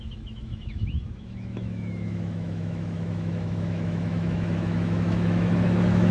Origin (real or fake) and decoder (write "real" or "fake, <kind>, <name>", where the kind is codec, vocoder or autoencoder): fake, autoencoder, DAC-VAE